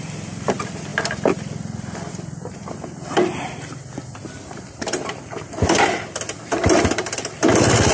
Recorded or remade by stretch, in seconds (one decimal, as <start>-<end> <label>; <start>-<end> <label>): 0.0-7.9 remade